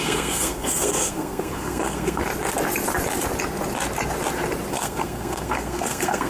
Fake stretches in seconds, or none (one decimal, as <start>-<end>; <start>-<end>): 0.0-2.2; 4.7-6.3